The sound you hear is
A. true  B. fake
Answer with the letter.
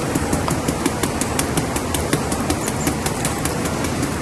A